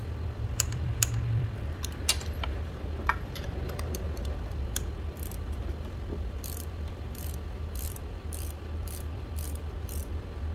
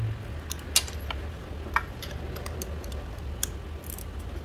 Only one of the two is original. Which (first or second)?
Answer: second